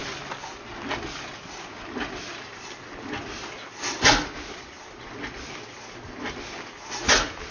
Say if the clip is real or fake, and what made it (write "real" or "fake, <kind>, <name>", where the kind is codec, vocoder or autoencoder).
real